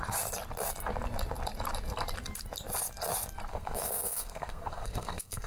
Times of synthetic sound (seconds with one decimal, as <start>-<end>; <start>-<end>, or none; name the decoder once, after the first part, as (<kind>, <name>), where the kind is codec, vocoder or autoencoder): 3.5-5.5 (codec, SNAC)